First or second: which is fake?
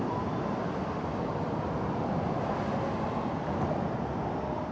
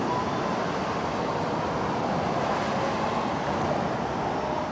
first